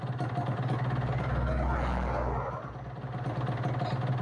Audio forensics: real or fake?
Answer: real